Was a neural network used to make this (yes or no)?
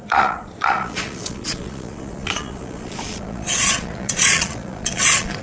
yes